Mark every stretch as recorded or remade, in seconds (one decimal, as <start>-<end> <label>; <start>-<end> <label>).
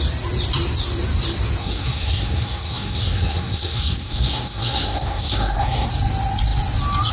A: 0.0-1.6 recorded; 1.6-5.9 remade; 5.9-7.1 recorded